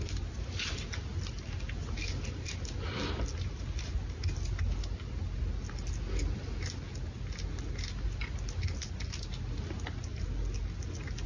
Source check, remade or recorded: recorded